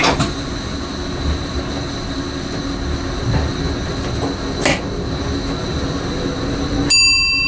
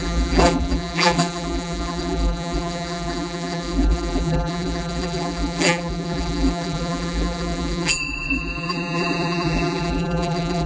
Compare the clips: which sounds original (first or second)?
first